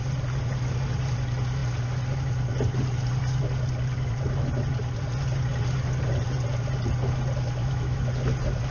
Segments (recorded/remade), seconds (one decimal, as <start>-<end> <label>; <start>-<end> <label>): 0.0-7.6 recorded; 7.6-8.1 remade; 8.1-8.7 recorded